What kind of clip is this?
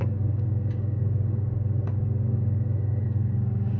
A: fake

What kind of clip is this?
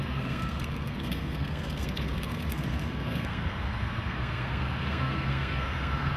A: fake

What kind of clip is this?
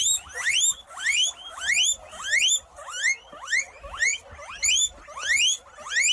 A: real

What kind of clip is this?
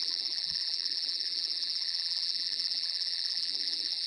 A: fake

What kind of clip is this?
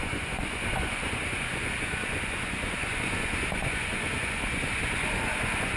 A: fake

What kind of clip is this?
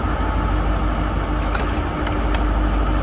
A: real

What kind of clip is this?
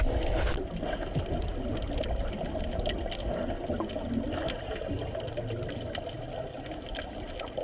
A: real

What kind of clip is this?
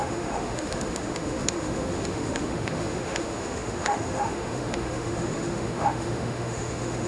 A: fake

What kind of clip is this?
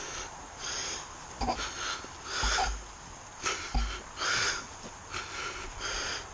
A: real